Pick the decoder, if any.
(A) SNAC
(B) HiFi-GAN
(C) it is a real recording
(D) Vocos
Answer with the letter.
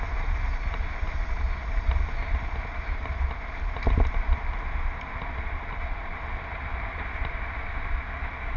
C